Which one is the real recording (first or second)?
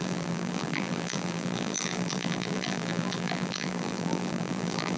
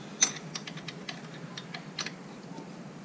second